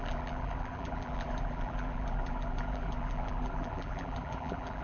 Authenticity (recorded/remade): remade